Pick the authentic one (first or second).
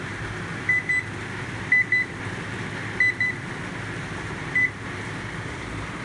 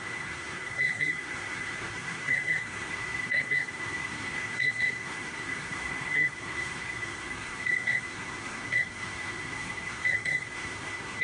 first